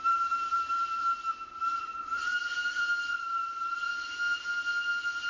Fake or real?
fake